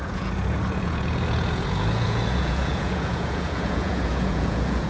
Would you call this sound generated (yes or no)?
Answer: yes